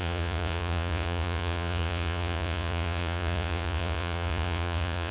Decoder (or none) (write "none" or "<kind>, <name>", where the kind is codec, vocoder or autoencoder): vocoder, Vocos